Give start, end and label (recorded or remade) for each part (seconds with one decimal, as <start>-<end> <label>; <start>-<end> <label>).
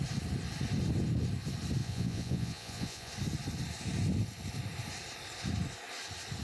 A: 0.0-1.8 recorded; 1.8-3.1 remade; 3.1-6.4 recorded